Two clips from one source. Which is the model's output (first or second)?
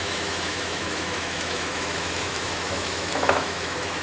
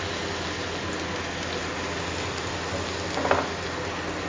first